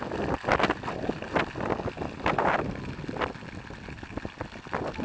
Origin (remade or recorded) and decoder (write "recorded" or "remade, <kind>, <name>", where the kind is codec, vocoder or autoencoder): recorded